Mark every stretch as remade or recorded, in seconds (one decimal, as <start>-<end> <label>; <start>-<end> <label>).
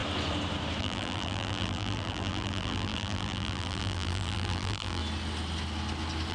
0.0-0.8 recorded; 0.8-5.0 remade; 5.0-6.3 recorded